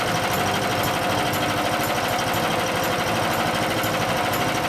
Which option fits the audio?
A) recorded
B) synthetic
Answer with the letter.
A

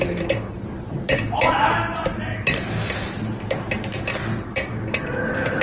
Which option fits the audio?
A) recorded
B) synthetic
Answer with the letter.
A